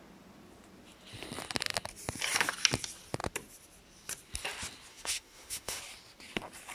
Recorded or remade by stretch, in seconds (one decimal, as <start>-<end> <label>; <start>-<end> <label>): 0.0-4.9 recorded; 4.9-5.8 remade; 5.8-6.7 recorded

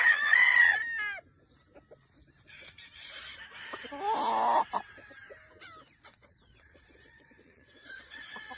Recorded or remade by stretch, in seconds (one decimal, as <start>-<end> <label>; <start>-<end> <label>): 0.0-0.8 remade; 0.8-5.8 recorded; 5.8-8.6 remade

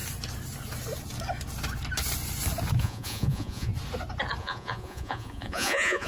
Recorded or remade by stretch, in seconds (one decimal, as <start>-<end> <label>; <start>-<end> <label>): 0.0-2.8 recorded; 2.8-3.7 remade; 3.7-4.4 recorded; 4.4-6.1 remade